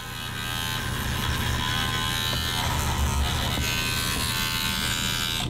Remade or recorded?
recorded